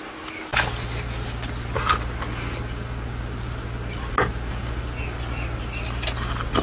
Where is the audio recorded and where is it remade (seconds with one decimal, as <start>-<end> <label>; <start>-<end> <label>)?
0.0-6.6 recorded